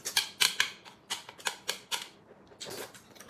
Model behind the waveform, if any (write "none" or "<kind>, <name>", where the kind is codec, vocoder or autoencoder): none